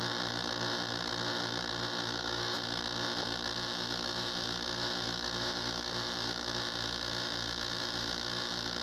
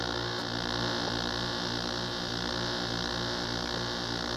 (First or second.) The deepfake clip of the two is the first